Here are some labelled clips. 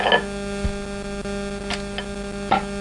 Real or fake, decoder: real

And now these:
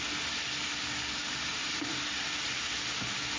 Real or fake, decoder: real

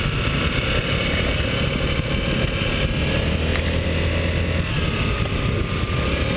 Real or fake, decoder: real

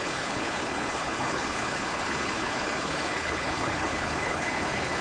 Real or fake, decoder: fake, codec, HILCodec